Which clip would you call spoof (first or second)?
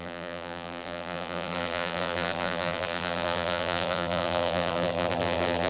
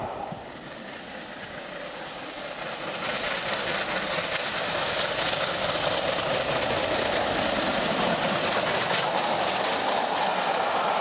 first